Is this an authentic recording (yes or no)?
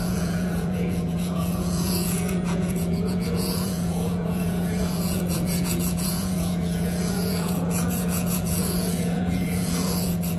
no